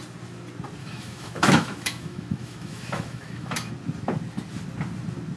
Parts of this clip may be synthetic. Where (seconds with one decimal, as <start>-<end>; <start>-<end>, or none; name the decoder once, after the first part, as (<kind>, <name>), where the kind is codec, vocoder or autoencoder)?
0.8-3.7 (autoencoder, DAC-VAE)